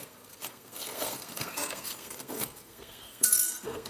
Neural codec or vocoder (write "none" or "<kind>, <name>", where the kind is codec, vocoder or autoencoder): codec, SNAC